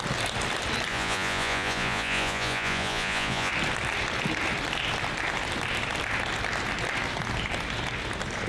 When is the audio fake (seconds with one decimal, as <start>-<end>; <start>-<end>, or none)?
0.9-3.5